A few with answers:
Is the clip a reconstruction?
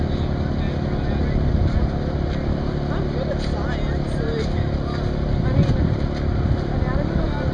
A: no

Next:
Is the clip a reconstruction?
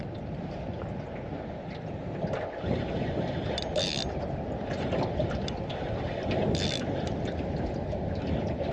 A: no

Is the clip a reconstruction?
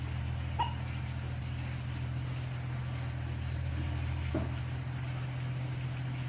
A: no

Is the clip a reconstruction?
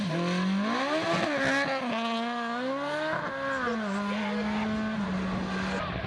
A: no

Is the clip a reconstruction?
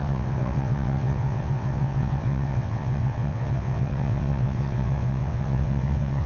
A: yes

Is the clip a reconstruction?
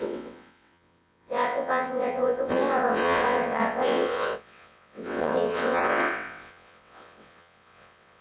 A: yes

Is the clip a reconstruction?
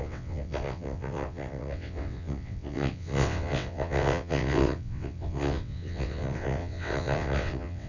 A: yes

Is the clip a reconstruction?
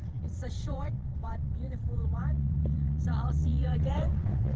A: yes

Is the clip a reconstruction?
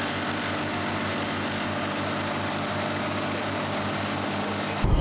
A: no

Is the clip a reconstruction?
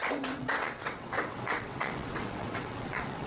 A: yes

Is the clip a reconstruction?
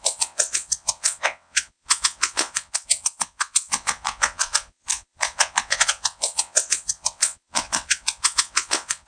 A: yes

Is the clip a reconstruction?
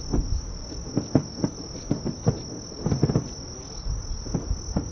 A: no